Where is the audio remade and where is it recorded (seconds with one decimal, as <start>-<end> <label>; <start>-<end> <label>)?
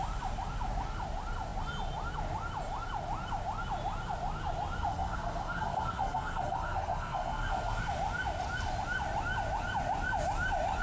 0.0-4.9 recorded; 4.9-7.8 remade; 7.8-10.8 recorded